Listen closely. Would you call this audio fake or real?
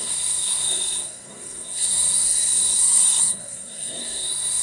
fake